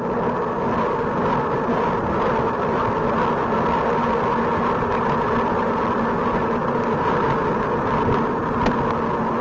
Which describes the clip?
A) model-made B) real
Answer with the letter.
B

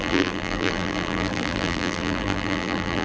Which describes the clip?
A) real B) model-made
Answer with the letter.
B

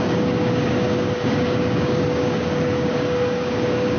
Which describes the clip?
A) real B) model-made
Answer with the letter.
B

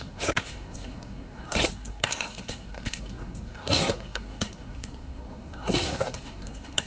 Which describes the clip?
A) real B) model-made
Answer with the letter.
B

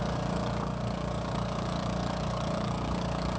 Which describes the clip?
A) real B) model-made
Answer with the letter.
B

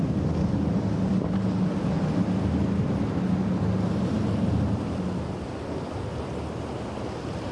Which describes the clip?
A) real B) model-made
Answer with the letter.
A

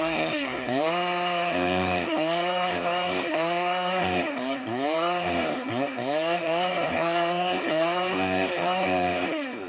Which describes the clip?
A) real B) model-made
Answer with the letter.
B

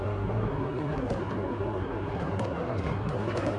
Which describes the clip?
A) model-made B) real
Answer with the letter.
A